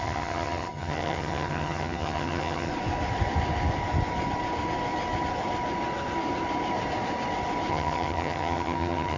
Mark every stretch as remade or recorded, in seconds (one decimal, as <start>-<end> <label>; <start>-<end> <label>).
0.0-2.7 remade; 2.7-7.7 recorded; 7.7-9.2 remade